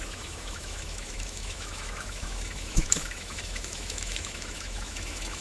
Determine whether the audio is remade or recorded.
remade